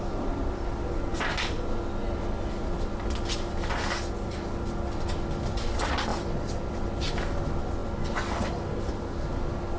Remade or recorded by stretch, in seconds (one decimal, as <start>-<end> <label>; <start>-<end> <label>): 0.0-9.8 recorded